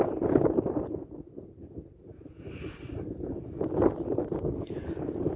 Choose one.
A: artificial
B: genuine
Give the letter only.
B